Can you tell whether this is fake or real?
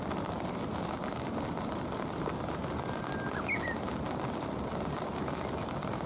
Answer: real